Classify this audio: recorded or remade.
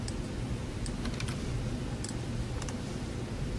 recorded